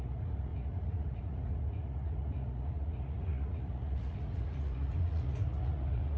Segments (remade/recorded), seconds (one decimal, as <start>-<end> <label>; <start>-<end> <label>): 0.0-6.2 remade